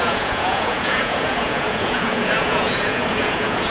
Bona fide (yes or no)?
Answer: no